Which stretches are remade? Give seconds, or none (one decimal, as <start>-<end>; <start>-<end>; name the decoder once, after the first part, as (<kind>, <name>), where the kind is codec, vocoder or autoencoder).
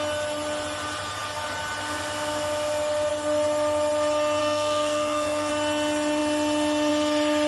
4.4-5.5 (codec, SNAC)